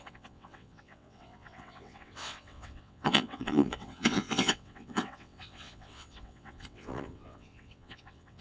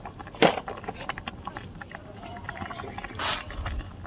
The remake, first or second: first